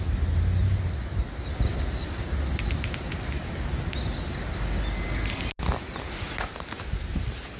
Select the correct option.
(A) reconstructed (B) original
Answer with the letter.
B